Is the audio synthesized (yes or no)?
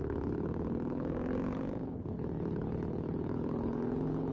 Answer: yes